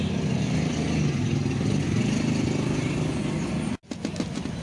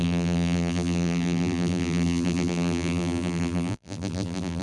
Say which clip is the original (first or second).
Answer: first